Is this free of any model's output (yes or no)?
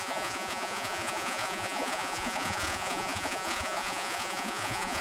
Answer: no